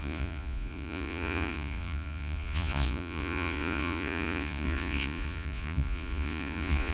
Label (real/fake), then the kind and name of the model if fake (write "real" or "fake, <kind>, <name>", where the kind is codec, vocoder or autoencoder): fake, vocoder, Vocos